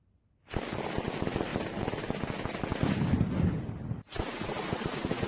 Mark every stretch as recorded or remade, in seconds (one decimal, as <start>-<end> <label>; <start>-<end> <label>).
0.0-5.3 recorded